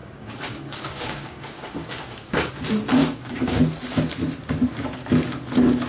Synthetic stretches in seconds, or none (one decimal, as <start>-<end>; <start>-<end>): 0.0-2.5; 3.0-3.6